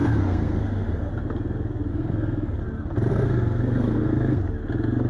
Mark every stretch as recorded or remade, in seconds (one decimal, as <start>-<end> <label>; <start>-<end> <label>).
0.0-1.1 remade; 1.1-1.9 recorded; 1.9-2.6 remade; 2.6-3.1 recorded; 3.1-4.4 remade; 4.4-5.1 recorded